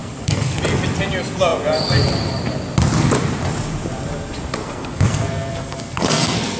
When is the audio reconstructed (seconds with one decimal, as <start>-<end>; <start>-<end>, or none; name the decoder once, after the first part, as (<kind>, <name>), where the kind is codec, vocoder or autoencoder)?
0.0-0.6 (codec, SNAC); 4.6-6.6